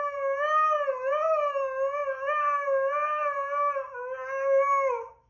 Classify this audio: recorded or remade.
recorded